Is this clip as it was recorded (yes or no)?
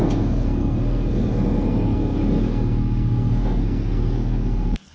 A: no